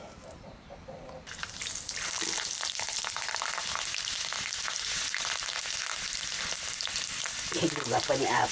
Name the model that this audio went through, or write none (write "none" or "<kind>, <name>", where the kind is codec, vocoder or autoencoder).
none